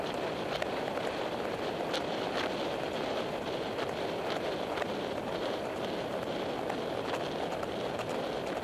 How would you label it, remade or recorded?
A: remade